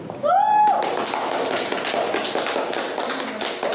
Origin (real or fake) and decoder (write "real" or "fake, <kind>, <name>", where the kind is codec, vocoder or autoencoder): real